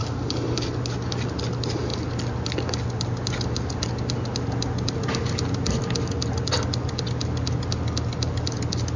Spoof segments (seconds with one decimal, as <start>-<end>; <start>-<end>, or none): none